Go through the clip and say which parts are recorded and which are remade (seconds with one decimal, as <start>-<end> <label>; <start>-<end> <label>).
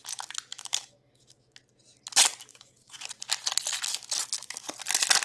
0.0-0.5 recorded; 0.5-1.6 remade; 1.6-2.5 recorded; 2.5-3.1 remade; 3.1-5.2 recorded